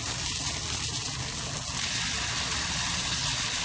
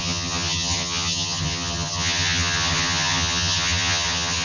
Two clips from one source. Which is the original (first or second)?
first